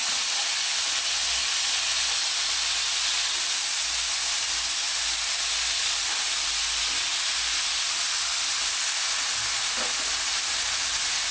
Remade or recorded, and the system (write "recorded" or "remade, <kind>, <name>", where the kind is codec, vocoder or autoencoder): recorded